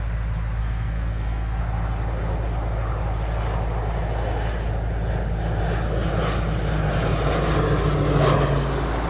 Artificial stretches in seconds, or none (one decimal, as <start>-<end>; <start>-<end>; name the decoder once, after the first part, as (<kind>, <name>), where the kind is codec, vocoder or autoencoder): 0.6-1.6 (codec, SNAC)